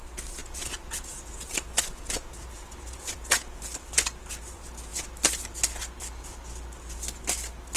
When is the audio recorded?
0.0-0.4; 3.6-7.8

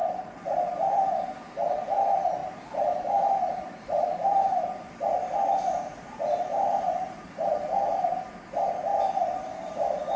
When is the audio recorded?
1.0-2.4; 5.0-5.9; 7.9-10.2

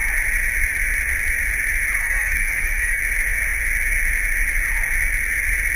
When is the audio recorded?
0.0-2.0; 3.0-5.8